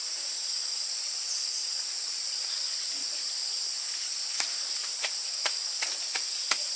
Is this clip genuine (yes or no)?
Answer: yes